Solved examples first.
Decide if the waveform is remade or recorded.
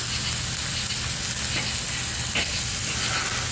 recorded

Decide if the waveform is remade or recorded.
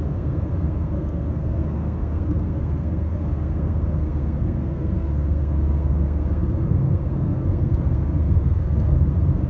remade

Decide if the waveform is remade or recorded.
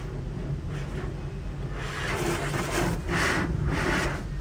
recorded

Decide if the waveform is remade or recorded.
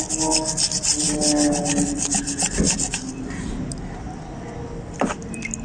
recorded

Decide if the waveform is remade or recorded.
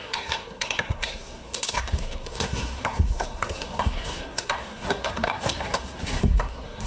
remade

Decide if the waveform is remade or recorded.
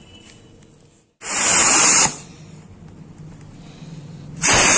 recorded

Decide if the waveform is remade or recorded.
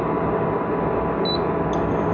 recorded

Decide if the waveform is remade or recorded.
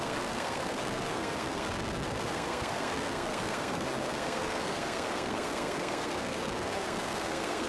remade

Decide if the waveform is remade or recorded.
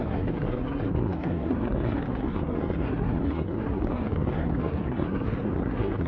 remade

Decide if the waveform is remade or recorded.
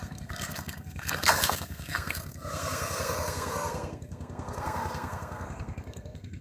remade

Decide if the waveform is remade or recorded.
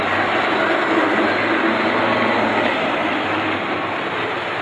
recorded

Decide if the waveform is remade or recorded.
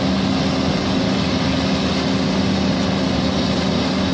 recorded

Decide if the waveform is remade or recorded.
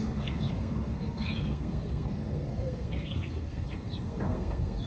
remade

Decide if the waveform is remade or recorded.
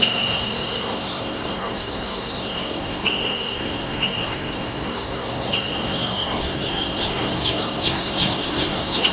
remade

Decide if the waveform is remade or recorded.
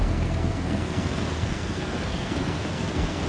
remade